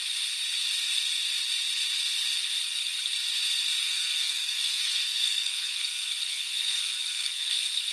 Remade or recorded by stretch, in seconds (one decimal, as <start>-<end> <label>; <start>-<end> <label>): 0.0-3.8 recorded; 3.8-7.9 remade